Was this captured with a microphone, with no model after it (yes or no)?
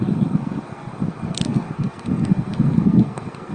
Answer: no